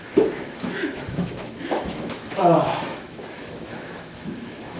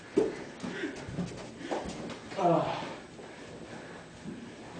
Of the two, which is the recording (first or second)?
second